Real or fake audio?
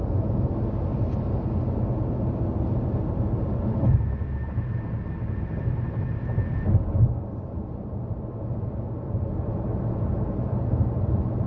real